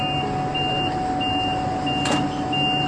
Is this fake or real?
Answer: real